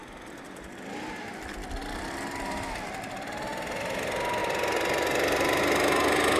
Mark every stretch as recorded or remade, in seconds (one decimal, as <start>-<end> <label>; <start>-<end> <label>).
0.0-6.4 recorded